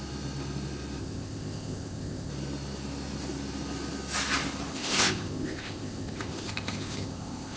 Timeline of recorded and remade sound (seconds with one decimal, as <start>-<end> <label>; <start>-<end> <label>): 0.0-1.0 recorded; 1.0-2.3 remade; 2.3-4.7 recorded; 4.7-7.6 remade